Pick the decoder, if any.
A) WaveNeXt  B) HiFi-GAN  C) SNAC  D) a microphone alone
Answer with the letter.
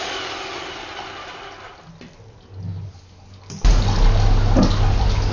D